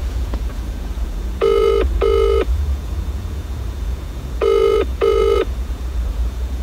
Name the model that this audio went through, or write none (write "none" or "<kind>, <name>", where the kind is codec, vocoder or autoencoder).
vocoder, Vocos